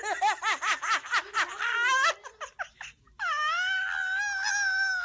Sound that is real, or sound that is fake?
real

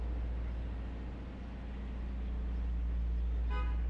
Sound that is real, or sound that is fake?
real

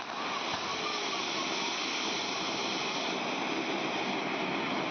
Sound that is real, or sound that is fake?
real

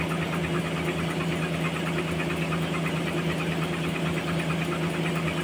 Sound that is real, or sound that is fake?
real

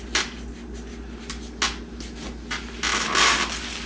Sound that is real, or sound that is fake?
real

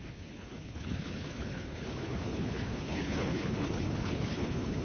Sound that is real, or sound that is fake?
fake